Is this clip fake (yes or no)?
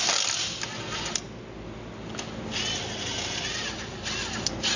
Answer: no